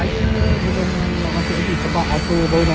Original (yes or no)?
yes